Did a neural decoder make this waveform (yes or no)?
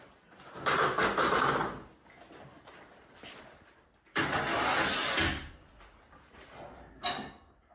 no